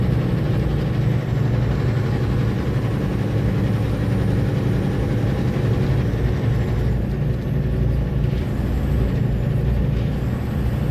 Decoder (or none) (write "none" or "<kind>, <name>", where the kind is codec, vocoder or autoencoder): none